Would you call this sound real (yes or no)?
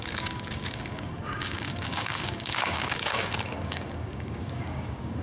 no